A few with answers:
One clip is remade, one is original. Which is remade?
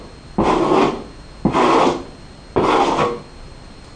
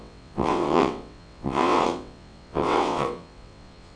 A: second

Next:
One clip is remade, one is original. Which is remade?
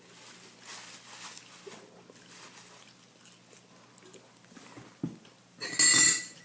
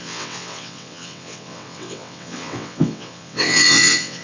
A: second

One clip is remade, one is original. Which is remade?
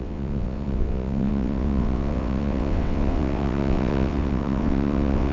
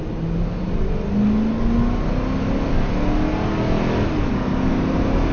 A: first